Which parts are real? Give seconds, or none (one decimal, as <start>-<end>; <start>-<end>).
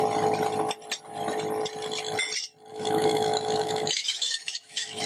0.0-2.7